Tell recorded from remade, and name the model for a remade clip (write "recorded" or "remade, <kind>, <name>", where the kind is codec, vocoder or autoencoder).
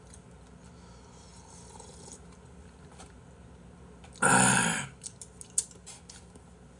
recorded